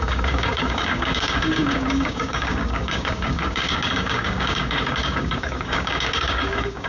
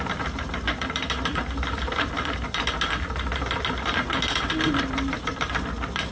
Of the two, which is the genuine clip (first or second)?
second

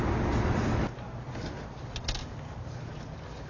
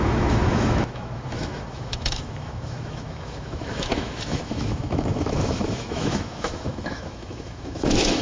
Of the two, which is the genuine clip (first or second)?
first